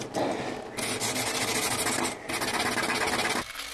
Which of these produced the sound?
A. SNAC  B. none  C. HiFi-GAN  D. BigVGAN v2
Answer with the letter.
B